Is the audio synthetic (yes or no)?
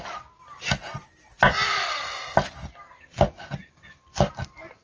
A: no